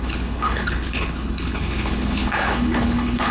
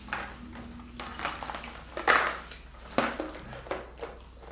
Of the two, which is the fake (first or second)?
first